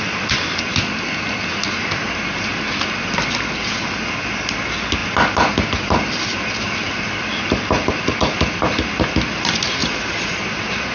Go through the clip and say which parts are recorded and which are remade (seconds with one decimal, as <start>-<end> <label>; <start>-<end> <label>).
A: 0.0-9.8 recorded; 9.8-10.4 remade; 10.4-10.9 recorded